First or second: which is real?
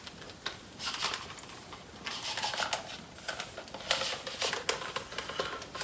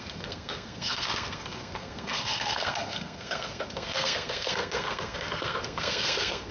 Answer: first